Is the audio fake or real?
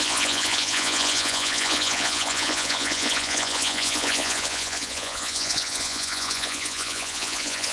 fake